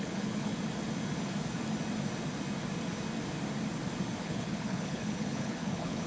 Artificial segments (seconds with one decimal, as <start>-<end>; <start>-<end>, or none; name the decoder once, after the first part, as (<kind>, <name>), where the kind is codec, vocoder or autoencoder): 0.0-0.5 (codec, HILCodec); 4.2-6.1